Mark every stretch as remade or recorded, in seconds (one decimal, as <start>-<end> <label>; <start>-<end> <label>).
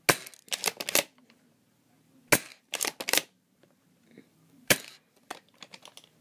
0.0-2.5 recorded; 2.5-3.6 remade; 3.6-4.3 recorded; 4.3-5.0 remade; 5.0-6.2 recorded